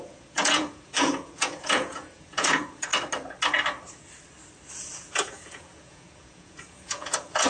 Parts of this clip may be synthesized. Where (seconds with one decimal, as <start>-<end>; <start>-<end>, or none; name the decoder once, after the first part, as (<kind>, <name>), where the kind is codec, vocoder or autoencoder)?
0.0-2.9 (vocoder, Vocos); 4.7-7.5